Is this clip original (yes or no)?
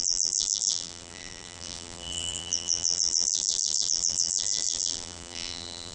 no